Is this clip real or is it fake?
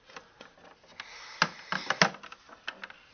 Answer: real